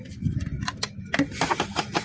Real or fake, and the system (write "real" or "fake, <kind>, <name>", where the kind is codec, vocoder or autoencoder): real